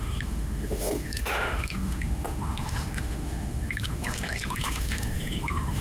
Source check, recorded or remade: remade